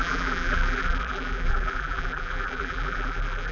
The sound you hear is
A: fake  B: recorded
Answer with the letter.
A